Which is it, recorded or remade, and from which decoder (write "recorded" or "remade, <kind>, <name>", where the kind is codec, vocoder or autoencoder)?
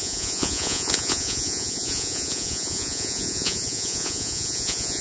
remade, vocoder, Vocos